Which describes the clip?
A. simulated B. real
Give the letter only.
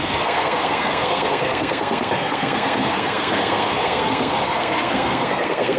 A